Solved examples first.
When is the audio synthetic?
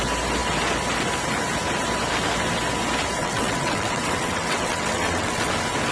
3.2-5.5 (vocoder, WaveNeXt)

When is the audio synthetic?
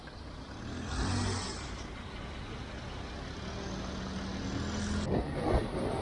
none